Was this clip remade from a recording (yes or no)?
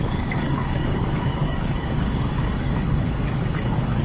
yes